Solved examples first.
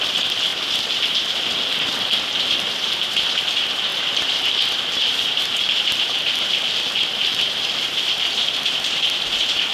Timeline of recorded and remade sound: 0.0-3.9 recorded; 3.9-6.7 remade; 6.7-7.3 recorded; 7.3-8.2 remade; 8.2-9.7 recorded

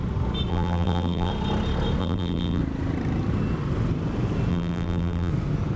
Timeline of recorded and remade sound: 0.0-0.5 recorded; 0.5-1.3 remade; 1.3-2.0 recorded; 2.0-2.6 remade; 2.6-4.5 recorded; 4.5-5.3 remade; 5.3-5.8 recorded